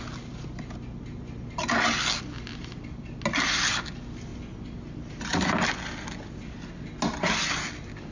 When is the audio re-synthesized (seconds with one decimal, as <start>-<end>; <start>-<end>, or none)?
none